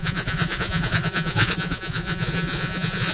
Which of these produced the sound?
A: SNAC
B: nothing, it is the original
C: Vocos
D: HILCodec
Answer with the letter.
C